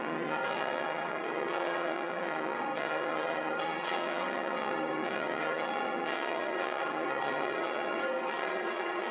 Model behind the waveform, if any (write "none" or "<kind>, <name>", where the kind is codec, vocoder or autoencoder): vocoder, WaveNeXt